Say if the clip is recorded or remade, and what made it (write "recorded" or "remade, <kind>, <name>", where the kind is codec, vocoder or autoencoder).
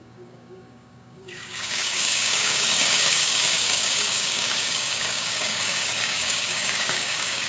remade, codec, DAC